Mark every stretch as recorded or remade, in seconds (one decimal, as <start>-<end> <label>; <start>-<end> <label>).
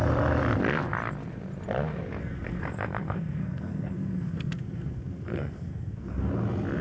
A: 0.0-2.2 recorded; 2.2-6.3 remade; 6.3-6.8 recorded